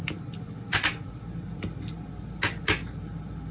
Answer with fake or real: real